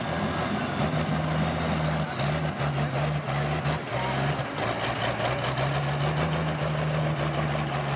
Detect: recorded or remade recorded